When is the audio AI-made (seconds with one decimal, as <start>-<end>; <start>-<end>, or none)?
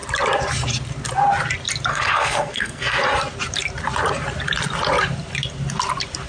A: 1.9-3.0